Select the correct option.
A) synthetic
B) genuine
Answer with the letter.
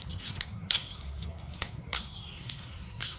A